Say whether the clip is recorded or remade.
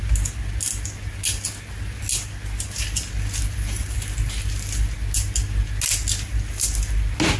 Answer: recorded